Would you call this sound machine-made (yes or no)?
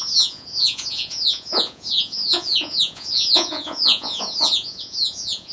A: yes